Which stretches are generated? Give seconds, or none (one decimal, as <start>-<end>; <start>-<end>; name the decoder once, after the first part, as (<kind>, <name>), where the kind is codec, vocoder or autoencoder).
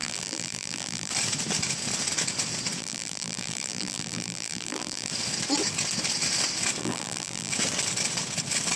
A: 0.0-1.1 (vocoder, BigVGAN v2); 2.8-5.1; 6.8-7.5